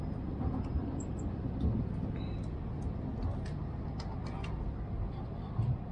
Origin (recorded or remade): recorded